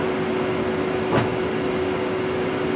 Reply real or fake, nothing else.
real